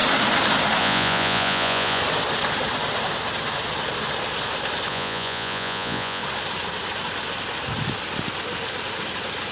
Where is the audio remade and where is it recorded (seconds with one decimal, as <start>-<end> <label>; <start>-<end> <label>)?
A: 0.0-0.8 recorded; 0.8-2.0 remade; 2.0-4.9 recorded; 4.9-6.2 remade; 6.2-9.5 recorded